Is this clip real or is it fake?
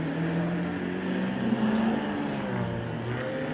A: real